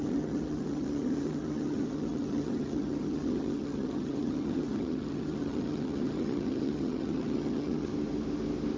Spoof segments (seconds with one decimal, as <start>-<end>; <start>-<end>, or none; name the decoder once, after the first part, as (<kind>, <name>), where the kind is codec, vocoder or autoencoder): 0.0-7.9 (vocoder, HiFi-GAN)